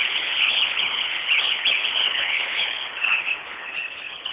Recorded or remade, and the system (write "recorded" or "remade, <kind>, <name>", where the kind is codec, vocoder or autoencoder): remade, codec, HILCodec